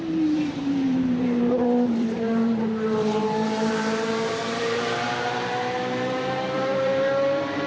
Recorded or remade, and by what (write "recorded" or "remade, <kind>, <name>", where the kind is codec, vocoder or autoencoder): remade, vocoder, BigVGAN v2